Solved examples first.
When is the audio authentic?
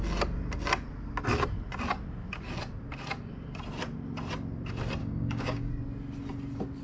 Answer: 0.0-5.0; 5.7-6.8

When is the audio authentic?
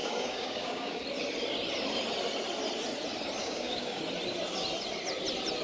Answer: 1.0-3.4; 4.0-5.6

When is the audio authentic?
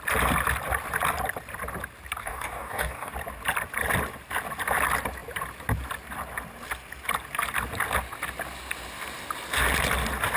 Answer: 0.0-2.2; 3.1-10.4